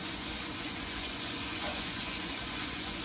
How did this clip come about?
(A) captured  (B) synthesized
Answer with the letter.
B